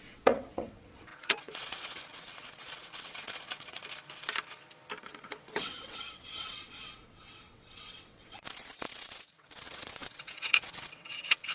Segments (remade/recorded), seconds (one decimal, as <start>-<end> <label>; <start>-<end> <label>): 0.0-3.8 remade; 3.8-5.0 recorded; 5.0-11.5 remade